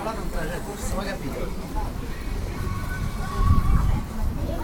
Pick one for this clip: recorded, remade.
remade